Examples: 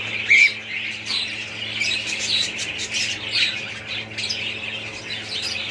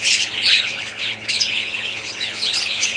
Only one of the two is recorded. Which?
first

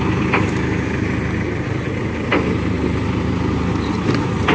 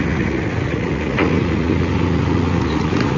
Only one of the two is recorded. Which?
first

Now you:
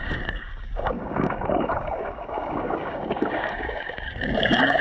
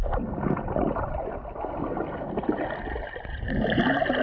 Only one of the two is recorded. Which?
second